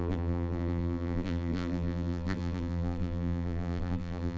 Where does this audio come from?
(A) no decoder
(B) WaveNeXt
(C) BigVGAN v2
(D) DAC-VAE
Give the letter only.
C